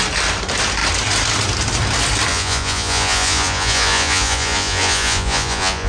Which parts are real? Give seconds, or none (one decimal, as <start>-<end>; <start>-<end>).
0.0-2.3